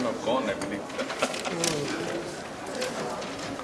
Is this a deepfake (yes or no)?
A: no